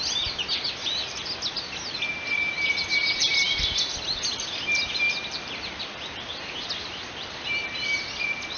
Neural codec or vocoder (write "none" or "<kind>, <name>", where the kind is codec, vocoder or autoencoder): none